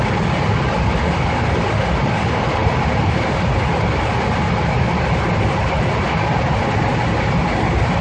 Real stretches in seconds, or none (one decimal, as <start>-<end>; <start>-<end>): 0.0-8.0